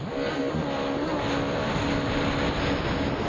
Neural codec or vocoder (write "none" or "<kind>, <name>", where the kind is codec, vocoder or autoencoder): none